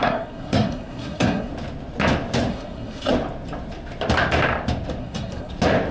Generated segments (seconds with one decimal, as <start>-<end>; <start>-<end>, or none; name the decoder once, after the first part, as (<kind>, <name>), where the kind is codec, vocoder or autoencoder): 0.0-1.5 (codec, SNAC); 2.5-3.1; 5.0-5.5